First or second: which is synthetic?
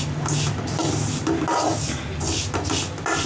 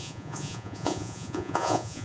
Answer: second